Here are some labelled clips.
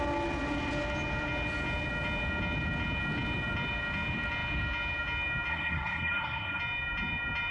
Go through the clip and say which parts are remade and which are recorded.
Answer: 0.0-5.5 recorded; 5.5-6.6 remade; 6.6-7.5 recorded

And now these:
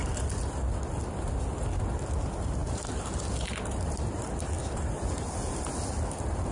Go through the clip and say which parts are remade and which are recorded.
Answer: 0.0-2.6 recorded; 2.6-5.3 remade; 5.3-6.5 recorded

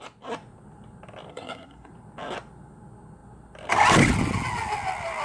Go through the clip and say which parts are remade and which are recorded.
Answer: 0.0-1.3 recorded; 1.3-1.9 remade; 1.9-5.2 recorded

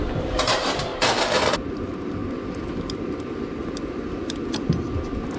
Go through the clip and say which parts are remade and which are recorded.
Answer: 0.0-0.9 remade; 0.9-1.7 recorded; 1.7-2.2 remade; 2.2-5.4 recorded